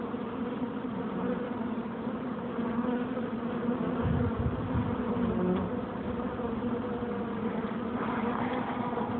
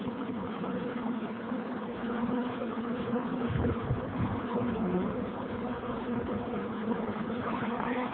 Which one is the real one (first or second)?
first